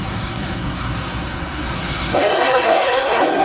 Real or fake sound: fake